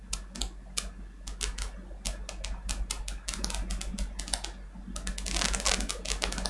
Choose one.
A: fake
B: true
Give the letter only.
B